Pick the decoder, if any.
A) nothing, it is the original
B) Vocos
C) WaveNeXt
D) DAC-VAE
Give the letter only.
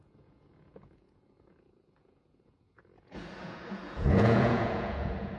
B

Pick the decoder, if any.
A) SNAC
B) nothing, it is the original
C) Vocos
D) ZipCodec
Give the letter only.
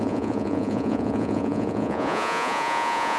C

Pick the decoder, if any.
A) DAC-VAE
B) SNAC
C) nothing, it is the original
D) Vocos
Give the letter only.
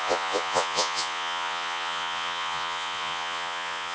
D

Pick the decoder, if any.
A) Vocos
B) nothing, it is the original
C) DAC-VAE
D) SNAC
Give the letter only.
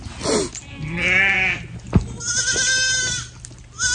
B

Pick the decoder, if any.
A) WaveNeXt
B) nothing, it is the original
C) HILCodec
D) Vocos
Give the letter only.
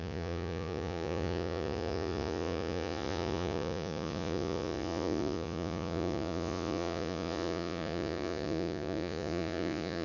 D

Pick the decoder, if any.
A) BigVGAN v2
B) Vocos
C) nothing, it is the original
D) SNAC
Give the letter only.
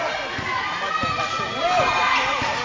C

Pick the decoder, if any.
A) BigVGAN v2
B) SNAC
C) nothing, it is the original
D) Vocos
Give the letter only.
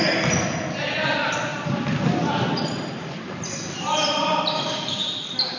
C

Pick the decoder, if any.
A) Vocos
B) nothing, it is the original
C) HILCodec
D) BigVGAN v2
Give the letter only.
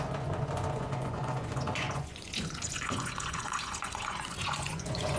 A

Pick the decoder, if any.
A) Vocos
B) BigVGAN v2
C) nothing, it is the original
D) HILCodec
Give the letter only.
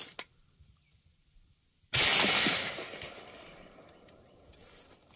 C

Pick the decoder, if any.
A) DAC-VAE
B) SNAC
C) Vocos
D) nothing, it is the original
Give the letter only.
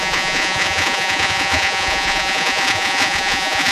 C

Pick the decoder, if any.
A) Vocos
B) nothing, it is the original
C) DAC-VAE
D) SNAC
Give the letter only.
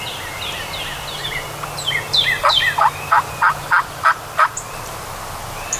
B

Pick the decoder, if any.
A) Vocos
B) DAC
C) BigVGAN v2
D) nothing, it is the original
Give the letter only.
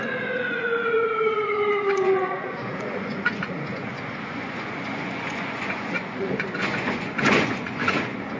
A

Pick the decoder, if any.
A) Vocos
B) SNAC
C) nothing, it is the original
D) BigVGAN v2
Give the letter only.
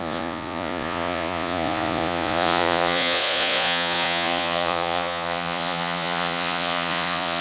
A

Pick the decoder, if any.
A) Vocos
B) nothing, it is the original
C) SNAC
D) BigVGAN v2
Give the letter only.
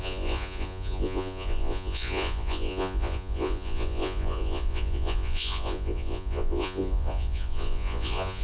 A